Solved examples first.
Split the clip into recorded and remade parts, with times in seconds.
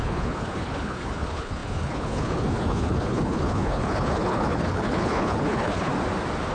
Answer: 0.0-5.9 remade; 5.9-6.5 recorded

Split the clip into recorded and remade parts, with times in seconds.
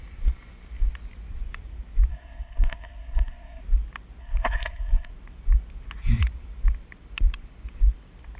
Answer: 0.0-2.1 recorded; 2.1-3.6 remade; 3.6-4.2 recorded; 4.2-5.1 remade; 5.1-8.4 recorded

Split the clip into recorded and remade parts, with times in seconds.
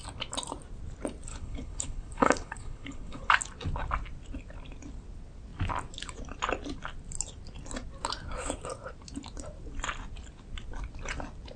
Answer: 0.0-1.3 recorded; 1.3-3.3 remade; 3.3-11.6 recorded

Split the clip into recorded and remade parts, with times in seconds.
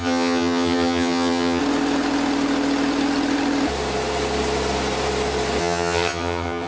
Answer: 0.0-1.6 remade; 1.6-5.6 recorded; 5.6-6.7 remade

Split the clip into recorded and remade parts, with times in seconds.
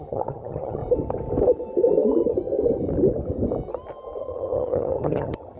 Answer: 0.0-0.8 remade; 0.8-4.2 recorded; 4.2-5.6 remade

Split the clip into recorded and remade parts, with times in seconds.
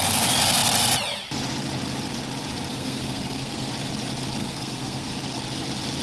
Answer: 0.0-2.7 recorded; 2.7-3.7 remade; 3.7-4.4 recorded; 4.4-5.1 remade; 5.1-6.0 recorded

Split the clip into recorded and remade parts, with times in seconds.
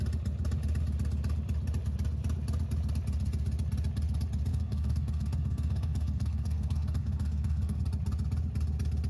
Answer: 0.0-4.5 recorded; 4.5-7.8 remade; 7.8-9.1 recorded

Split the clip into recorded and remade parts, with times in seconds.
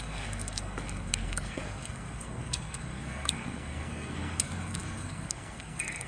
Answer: 0.0-6.1 remade